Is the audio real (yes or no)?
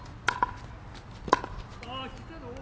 yes